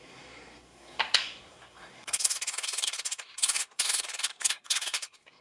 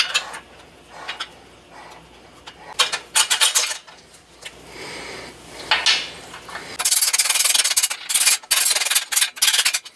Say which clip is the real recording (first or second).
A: second